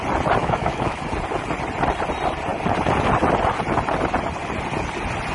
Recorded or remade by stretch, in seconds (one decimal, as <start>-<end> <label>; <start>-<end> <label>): 0.0-0.4 recorded; 0.4-1.0 remade; 1.0-5.3 recorded